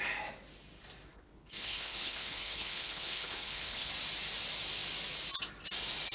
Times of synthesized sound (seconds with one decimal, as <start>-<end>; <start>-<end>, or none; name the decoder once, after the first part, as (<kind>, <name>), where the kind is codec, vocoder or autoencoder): 1.1-3.9 (codec, HILCodec)